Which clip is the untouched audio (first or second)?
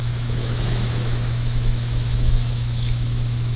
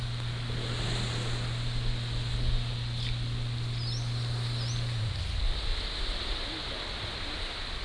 second